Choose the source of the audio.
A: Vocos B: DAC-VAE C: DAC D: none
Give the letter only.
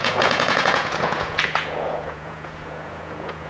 A